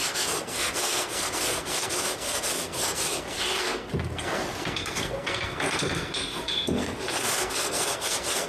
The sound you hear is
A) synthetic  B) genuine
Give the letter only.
A